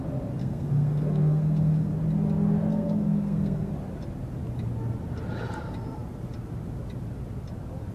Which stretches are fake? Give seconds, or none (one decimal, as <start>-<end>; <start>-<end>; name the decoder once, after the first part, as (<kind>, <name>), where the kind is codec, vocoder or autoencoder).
0.4-1.9 (codec, SNAC); 2.7-3.7